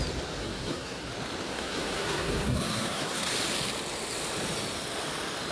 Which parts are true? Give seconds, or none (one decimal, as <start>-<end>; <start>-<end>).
0.0-0.4; 1.1-1.5; 3.3-5.5